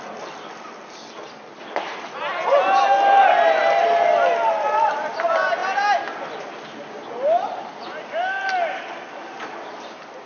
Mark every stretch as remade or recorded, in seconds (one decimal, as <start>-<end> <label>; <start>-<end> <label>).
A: 0.0-10.3 recorded